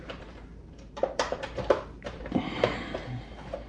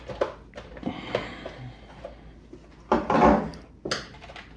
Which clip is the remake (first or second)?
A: first